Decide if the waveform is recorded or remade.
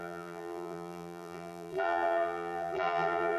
remade